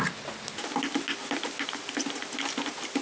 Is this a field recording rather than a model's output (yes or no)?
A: yes